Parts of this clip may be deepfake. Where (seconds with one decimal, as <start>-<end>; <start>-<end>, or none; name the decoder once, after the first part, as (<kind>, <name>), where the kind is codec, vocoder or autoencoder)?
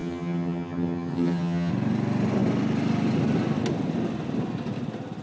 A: 0.0-1.7 (vocoder, HiFi-GAN)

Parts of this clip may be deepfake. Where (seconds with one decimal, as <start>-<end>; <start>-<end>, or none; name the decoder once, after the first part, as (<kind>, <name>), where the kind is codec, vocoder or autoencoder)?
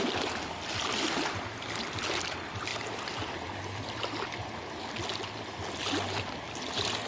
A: none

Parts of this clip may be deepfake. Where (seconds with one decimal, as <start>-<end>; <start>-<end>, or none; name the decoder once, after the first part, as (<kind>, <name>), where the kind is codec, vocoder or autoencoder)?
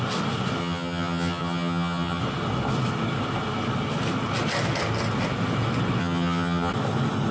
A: 0.6-2.2 (vocoder, HiFi-GAN); 6.0-6.7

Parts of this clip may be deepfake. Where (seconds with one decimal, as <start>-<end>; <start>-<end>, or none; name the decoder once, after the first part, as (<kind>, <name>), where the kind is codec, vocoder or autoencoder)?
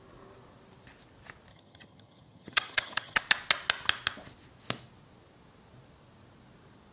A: 1.5-3.2 (vocoder, HiFi-GAN)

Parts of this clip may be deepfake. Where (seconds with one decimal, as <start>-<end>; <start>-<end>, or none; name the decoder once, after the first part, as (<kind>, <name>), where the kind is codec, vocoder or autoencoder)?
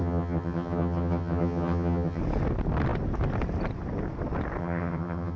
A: 0.0-2.2 (vocoder, HiFi-GAN); 4.6-5.4